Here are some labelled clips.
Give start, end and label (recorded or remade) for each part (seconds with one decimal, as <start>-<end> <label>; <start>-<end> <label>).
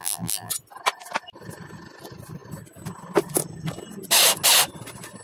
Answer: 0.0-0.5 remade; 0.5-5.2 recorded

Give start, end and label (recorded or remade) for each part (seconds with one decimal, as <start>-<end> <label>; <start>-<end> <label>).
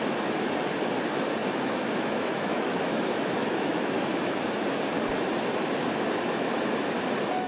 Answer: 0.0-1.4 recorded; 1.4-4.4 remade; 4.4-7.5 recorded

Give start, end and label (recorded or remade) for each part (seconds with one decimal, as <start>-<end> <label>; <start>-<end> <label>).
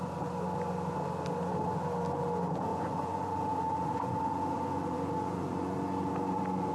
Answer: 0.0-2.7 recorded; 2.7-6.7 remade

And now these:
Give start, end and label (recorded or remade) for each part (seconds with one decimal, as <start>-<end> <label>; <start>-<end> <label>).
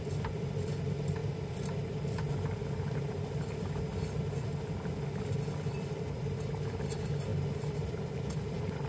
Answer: 0.0-8.9 recorded